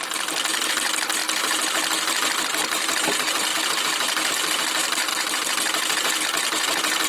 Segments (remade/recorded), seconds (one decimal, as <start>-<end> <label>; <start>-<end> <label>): 0.0-7.1 recorded